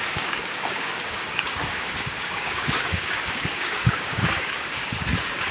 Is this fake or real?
fake